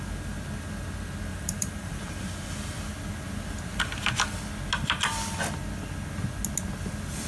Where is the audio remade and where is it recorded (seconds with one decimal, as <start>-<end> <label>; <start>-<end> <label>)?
0.0-1.3 recorded; 1.3-2.2 remade; 2.2-7.3 recorded